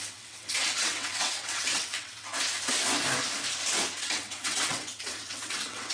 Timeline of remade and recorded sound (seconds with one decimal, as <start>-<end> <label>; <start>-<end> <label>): 0.0-2.3 remade; 2.3-4.0 recorded; 4.0-5.9 remade